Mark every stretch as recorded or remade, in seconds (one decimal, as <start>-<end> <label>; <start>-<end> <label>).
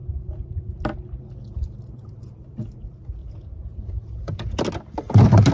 0.0-0.7 remade; 0.7-3.2 recorded; 3.2-4.6 remade; 4.6-5.5 recorded